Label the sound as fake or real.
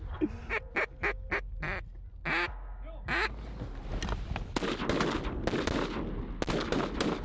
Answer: real